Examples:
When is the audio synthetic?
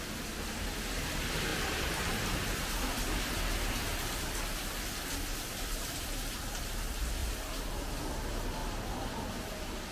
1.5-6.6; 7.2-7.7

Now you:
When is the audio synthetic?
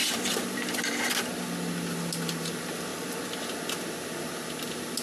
0.0-1.1